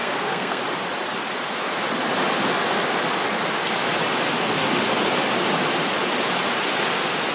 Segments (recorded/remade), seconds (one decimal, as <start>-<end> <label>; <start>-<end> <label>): 0.0-0.6 remade; 0.6-7.3 recorded